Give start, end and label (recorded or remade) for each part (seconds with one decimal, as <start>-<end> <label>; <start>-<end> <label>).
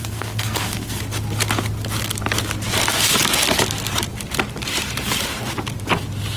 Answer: 0.0-1.0 remade; 1.0-6.4 recorded